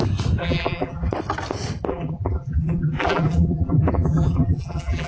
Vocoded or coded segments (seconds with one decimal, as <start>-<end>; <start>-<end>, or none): 0.4-1.1; 1.9-5.1